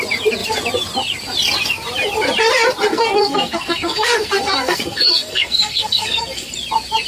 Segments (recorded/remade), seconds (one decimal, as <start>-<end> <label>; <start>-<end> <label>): 0.0-2.9 recorded; 2.9-6.5 remade; 6.5-7.1 recorded